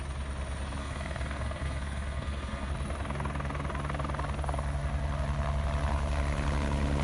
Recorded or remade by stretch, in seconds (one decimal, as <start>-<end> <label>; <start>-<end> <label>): 0.0-0.8 recorded; 0.8-2.7 remade; 2.7-7.0 recorded